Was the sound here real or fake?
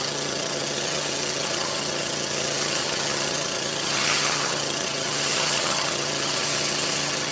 fake